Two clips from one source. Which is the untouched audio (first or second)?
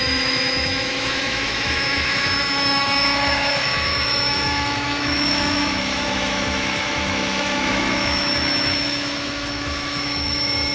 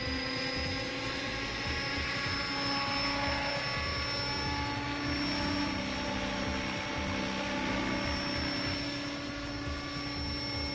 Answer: second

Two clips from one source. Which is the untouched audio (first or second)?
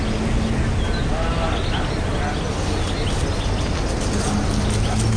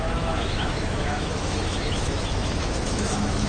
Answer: first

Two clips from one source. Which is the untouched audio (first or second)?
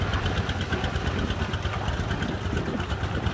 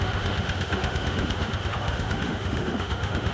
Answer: first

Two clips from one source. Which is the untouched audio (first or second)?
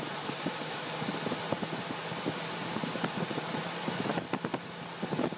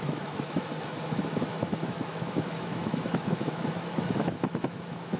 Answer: first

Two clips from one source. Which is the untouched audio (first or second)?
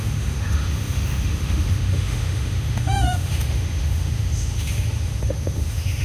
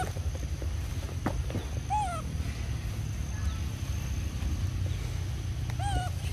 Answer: second